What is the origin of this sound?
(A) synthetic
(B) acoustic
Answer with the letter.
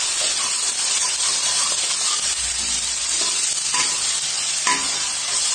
B